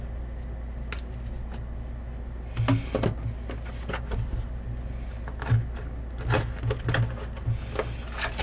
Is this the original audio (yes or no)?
yes